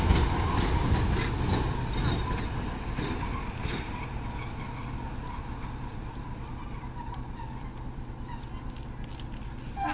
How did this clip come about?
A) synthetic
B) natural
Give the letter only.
B